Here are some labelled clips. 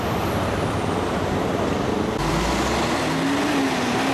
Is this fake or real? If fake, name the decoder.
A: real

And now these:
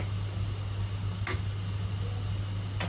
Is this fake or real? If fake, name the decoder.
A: real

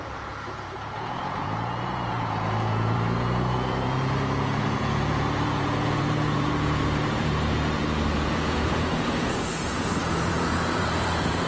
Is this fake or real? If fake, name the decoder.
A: fake, vocoder, Vocos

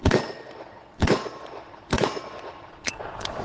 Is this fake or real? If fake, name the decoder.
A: fake, vocoder, Vocos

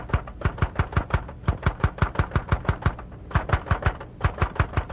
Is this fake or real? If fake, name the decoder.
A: real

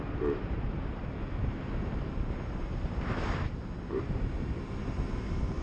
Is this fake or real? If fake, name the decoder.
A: fake, vocoder, BigVGAN v2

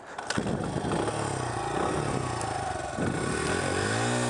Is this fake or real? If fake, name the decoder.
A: real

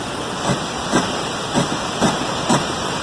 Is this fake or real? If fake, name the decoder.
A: real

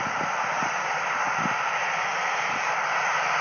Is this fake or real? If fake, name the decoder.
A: real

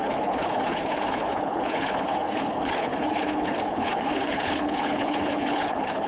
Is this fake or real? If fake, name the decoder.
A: fake, codec, HILCodec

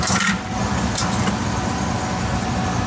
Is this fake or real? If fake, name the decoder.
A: real